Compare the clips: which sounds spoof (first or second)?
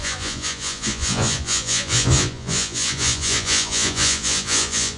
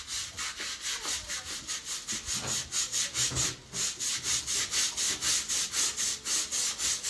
first